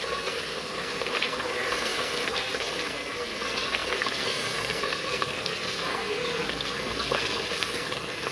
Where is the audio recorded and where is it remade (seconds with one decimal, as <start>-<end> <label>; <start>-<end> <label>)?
0.0-8.3 remade